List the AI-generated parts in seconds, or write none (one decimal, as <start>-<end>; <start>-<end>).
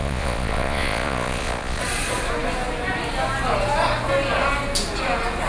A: 0.0-1.8